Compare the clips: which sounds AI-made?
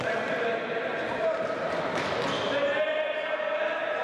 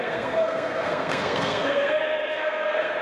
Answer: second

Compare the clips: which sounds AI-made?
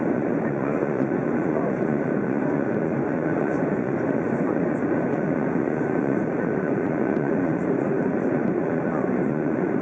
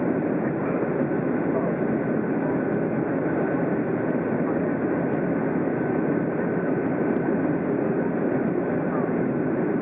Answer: first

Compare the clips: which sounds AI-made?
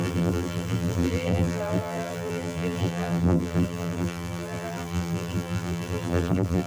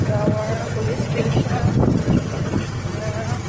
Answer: first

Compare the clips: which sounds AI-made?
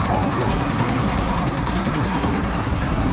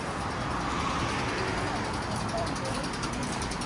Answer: first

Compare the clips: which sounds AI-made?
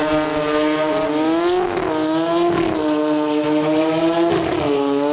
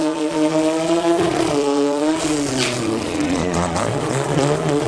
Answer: second